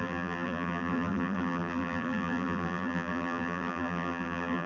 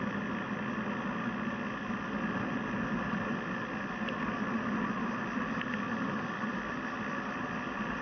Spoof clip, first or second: first